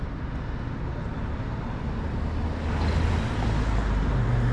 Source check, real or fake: real